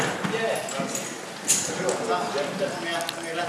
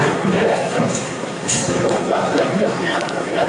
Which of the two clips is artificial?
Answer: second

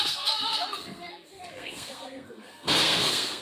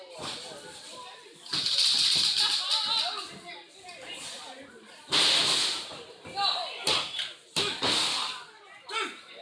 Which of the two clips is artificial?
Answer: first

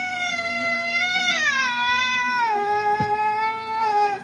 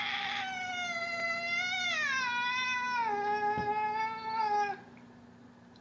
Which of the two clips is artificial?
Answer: first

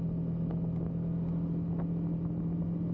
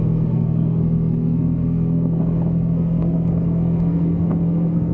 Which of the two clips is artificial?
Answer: second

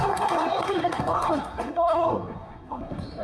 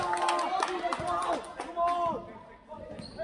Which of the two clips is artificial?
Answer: first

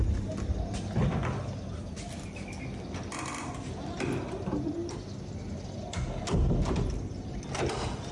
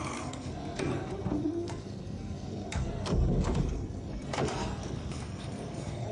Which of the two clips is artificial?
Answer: second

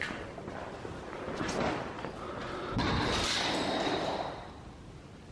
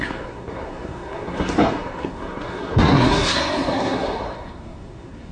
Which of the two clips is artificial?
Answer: second